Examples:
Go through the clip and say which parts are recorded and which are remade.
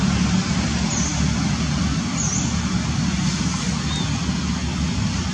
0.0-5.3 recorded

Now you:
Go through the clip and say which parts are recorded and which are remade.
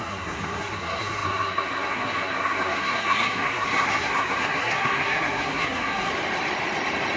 0.0-6.1 remade; 6.1-7.2 recorded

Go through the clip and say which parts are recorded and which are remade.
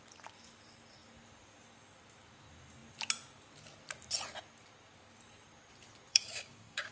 0.0-6.1 recorded; 6.1-6.9 remade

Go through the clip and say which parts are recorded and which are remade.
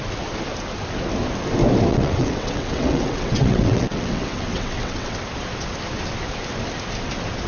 0.0-1.9 recorded; 1.9-5.2 remade; 5.2-7.5 recorded